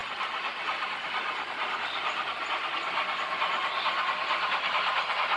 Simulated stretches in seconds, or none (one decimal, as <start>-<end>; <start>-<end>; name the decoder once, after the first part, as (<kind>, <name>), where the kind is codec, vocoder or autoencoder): none